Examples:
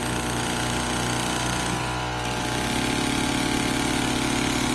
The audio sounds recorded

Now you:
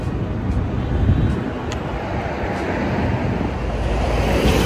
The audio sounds recorded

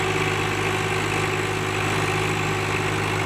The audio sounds recorded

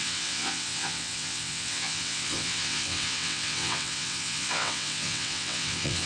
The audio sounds remade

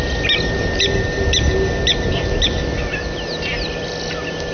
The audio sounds recorded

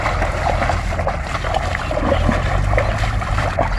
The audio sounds recorded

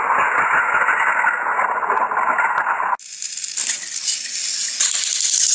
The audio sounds recorded